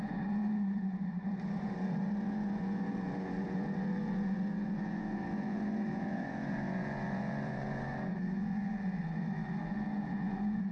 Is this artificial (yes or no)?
yes